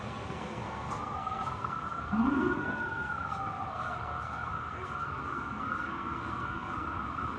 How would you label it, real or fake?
fake